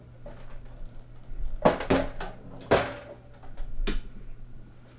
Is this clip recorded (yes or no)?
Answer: yes